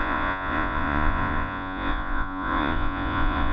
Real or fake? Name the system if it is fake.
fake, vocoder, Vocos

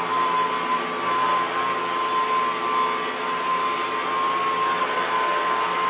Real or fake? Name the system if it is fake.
real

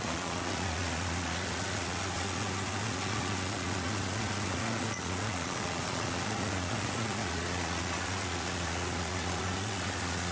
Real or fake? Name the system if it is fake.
fake, vocoder, Vocos